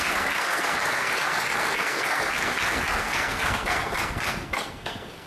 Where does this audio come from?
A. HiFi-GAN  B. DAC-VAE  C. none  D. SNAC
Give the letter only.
D